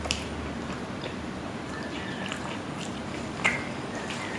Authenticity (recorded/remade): remade